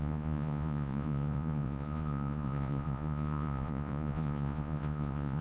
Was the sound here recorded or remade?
remade